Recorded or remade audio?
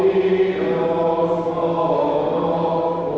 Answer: recorded